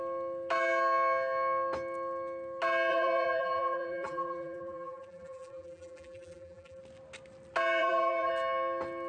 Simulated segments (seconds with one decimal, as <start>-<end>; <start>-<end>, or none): 2.9-6.8; 7.8-8.3